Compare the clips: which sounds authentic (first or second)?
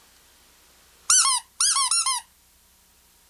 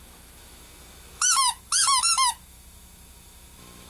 first